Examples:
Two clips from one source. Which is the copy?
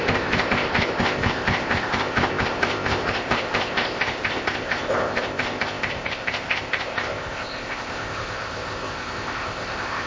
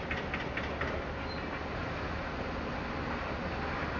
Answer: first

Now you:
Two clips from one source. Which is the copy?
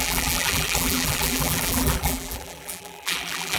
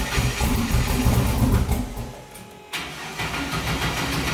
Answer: first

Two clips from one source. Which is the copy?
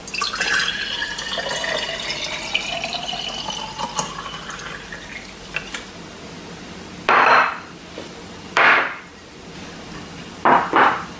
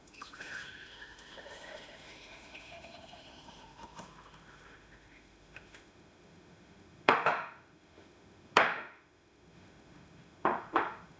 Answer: second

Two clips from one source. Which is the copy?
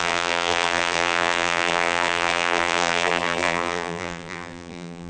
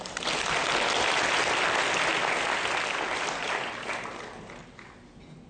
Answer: first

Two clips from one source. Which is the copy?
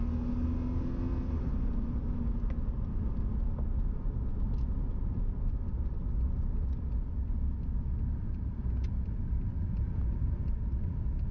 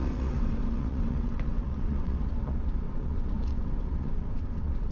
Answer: second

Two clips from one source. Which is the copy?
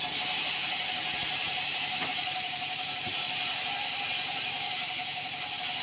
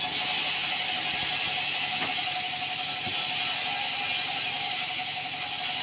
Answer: first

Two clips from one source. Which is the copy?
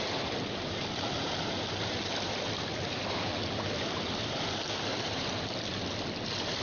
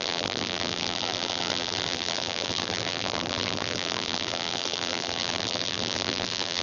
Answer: second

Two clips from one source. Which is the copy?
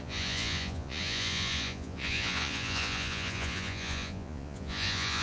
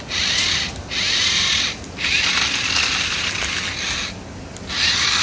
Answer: first